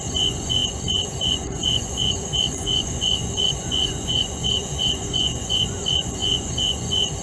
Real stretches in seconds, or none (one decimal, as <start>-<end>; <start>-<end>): none